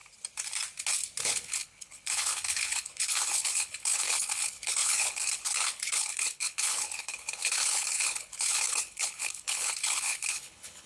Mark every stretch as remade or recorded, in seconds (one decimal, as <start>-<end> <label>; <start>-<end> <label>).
0.0-1.2 recorded; 1.2-10.9 remade